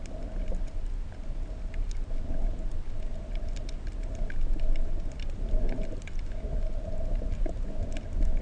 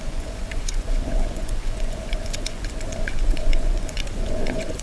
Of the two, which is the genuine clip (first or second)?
first